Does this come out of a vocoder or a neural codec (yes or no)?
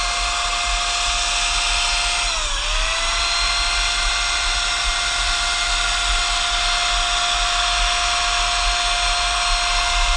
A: no